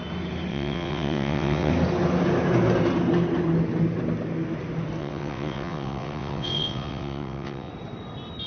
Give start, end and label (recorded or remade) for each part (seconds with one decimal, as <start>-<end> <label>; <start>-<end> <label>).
0.0-0.5 recorded; 0.5-1.7 remade; 1.7-5.0 recorded; 5.0-7.7 remade; 7.7-8.5 recorded